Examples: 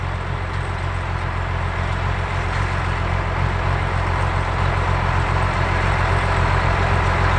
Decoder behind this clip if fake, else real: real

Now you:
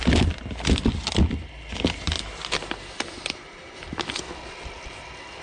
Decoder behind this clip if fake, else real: real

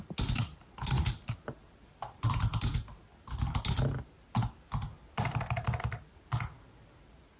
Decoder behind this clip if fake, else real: real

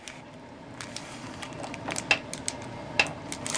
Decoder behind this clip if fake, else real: real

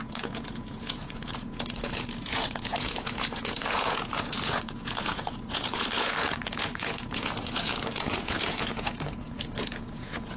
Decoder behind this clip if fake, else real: fake, vocoder, Vocos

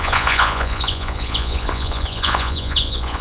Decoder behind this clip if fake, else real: fake, vocoder, Vocos